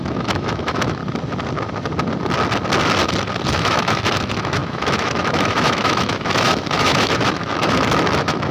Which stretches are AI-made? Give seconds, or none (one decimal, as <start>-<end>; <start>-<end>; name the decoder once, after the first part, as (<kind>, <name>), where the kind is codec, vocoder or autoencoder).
0.0-1.0 (autoencoder, DAC-VAE); 3.5-8.5